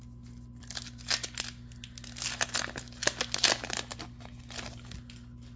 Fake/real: real